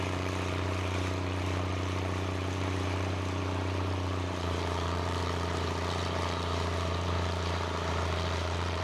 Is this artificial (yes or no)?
yes